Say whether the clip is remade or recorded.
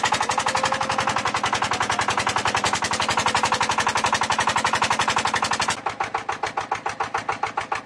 recorded